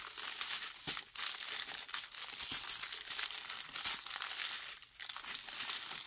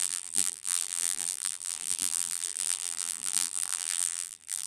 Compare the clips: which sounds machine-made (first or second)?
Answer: second